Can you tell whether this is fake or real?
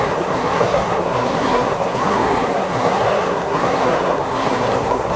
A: fake